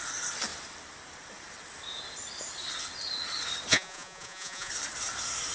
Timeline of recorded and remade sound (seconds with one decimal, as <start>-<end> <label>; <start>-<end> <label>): 0.0-3.7 recorded; 3.7-4.7 remade; 4.7-5.5 recorded